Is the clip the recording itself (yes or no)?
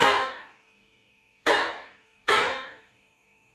no